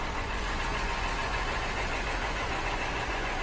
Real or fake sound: fake